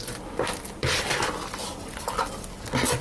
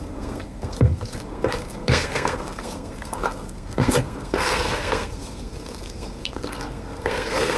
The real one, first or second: first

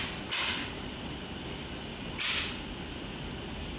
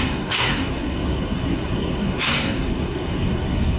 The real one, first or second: first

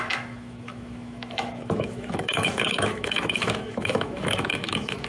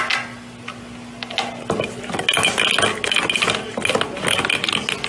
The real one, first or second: second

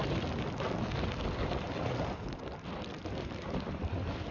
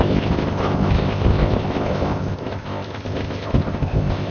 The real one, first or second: first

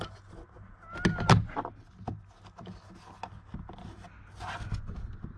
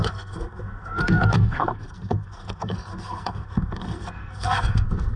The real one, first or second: first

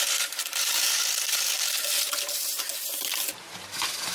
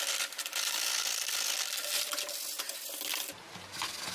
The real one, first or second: second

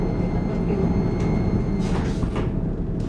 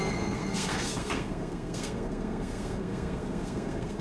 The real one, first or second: first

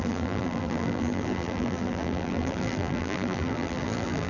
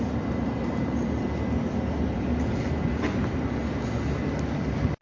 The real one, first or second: second